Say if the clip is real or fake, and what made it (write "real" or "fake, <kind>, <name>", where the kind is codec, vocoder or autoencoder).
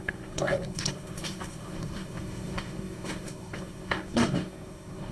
fake, codec, SNAC